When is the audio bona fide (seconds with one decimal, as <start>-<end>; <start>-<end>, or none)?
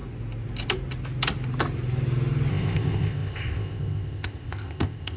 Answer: 0.0-2.5